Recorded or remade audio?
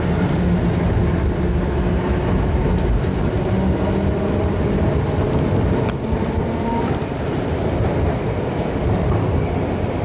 recorded